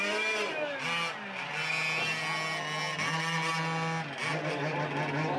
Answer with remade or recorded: recorded